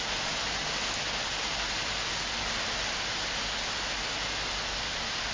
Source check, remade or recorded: recorded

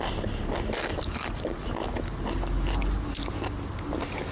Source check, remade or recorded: recorded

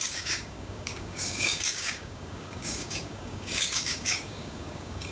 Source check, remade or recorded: remade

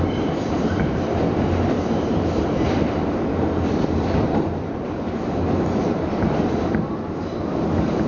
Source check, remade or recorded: remade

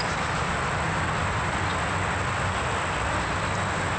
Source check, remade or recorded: recorded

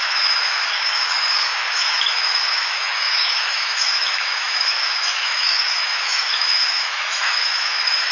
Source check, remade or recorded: remade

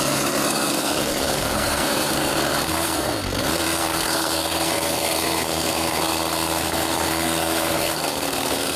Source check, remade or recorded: remade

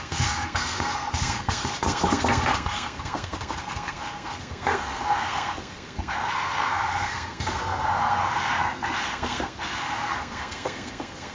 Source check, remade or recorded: remade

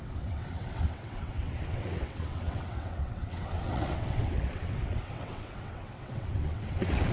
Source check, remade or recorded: remade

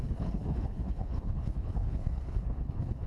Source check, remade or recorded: remade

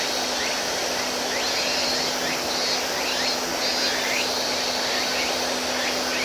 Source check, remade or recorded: recorded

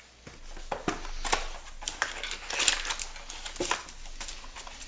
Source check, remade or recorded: recorded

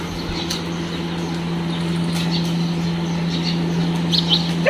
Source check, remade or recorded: recorded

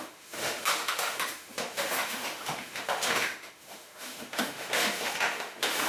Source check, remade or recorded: remade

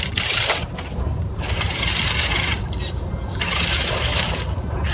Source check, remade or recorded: recorded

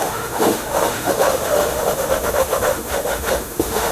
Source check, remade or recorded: remade